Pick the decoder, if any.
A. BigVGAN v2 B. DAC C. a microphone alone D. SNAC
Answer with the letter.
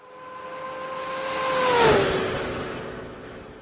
C